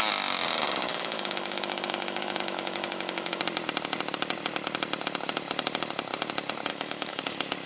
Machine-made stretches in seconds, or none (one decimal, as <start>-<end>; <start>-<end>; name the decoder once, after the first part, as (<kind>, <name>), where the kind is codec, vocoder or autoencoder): 0.9-3.4 (autoencoder, DAC-VAE); 6.7-7.2